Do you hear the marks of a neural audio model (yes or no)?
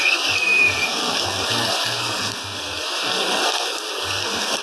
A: yes